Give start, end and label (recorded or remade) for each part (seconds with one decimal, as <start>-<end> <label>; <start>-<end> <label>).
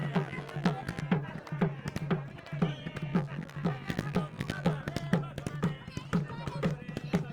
0.0-1.0 remade; 1.0-3.1 recorded; 3.1-4.8 remade; 4.8-7.3 recorded